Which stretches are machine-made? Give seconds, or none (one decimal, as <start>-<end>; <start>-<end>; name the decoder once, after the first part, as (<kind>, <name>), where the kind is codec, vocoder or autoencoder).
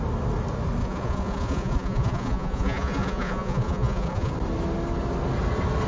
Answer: 0.8-4.3 (vocoder, Vocos)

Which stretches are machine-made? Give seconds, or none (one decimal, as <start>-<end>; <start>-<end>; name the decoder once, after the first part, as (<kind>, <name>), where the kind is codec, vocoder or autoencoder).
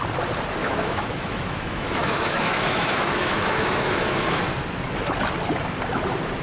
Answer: 0.6-4.4 (autoencoder, DAC-VAE)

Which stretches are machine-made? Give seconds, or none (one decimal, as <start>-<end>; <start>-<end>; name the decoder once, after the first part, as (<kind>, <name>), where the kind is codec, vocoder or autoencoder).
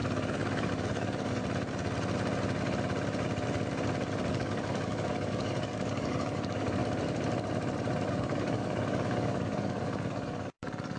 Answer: 0.0-1.4 (codec, DAC); 4.3-6.8; 8.1-11.0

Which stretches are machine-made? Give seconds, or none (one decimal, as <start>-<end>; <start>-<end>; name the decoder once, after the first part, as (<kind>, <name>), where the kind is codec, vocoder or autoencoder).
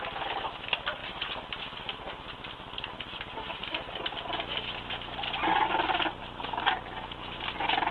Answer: none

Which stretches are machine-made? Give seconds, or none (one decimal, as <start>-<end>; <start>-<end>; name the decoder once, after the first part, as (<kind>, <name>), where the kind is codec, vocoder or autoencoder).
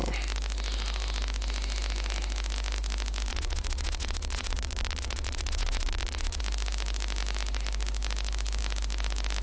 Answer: 3.3-6.4 (vocoder, WaveNeXt)